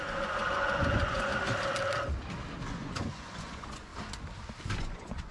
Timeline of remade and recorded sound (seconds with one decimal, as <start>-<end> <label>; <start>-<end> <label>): 0.0-1.3 remade; 1.3-2.7 recorded; 2.7-3.9 remade; 3.9-4.8 recorded; 4.8-5.3 remade